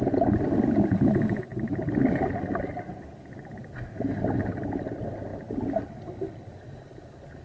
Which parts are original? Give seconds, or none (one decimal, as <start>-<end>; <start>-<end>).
0.0-7.4